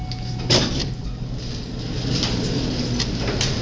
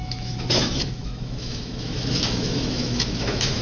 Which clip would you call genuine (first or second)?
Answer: first